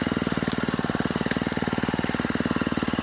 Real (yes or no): yes